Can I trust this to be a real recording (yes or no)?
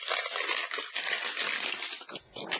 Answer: no